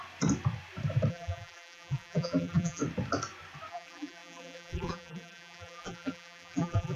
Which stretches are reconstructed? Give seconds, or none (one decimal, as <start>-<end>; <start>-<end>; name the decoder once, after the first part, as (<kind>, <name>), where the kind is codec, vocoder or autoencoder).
1.1-2.8 (vocoder, BigVGAN v2); 3.7-7.0